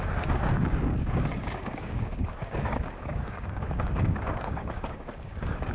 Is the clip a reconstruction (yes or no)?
yes